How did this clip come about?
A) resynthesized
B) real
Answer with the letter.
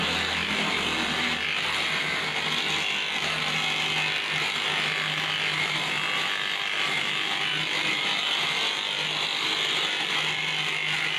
B